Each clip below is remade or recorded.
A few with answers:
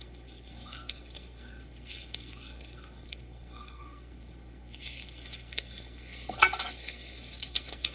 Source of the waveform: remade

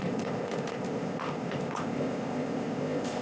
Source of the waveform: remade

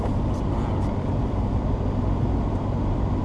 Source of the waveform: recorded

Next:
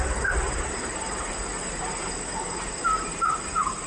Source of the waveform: remade